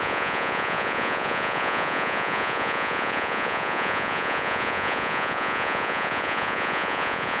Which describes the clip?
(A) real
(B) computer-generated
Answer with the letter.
B